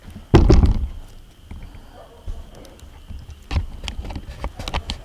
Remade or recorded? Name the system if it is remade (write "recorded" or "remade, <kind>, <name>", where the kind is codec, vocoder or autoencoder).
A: recorded